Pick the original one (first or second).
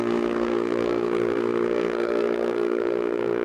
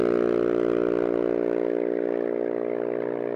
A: second